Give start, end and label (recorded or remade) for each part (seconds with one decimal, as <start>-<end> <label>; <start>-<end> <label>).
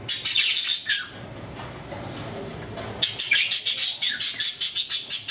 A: 0.0-5.3 recorded